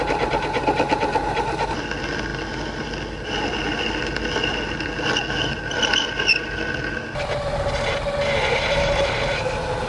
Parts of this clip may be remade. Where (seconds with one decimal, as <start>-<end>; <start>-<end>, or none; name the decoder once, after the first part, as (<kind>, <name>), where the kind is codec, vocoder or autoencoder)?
none